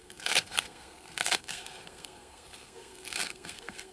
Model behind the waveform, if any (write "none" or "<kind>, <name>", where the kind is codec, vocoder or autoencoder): codec, SNAC